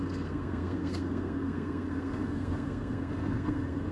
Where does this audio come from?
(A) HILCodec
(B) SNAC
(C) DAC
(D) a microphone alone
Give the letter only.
B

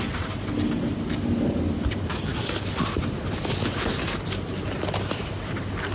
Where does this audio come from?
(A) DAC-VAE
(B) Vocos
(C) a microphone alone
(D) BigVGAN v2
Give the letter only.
C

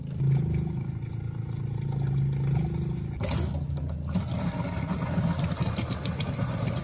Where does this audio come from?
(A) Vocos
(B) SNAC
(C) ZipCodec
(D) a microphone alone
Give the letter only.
D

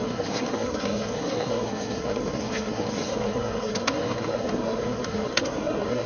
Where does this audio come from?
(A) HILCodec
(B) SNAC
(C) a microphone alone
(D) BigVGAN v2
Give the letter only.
B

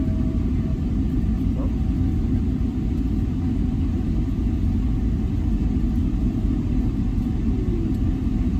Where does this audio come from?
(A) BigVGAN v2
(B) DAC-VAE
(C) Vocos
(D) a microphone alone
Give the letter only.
D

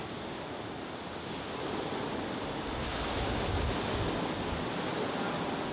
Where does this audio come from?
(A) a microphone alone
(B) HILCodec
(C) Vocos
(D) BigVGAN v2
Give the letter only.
A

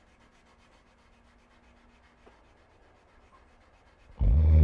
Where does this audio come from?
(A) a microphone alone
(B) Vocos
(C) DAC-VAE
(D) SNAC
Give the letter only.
A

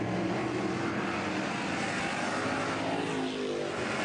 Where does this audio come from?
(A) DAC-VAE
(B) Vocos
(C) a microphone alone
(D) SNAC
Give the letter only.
C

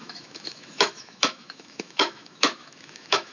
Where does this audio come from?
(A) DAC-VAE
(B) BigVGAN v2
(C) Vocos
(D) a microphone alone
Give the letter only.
A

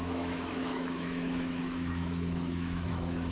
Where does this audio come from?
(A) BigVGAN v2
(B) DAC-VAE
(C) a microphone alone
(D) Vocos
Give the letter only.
B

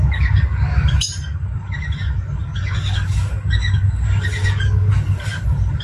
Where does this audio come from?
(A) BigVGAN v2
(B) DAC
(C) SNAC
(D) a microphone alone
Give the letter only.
B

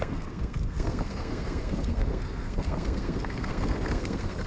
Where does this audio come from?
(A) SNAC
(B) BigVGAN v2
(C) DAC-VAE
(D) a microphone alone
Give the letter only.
A